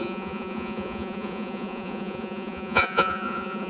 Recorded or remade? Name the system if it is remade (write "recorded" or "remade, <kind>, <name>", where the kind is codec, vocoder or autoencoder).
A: remade, vocoder, Vocos